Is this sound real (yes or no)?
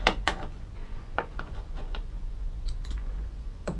no